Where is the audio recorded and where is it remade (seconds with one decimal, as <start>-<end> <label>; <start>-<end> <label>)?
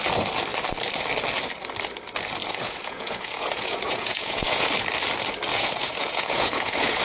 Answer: 0.0-2.4 recorded; 2.4-4.7 remade; 4.7-5.5 recorded; 5.5-7.0 remade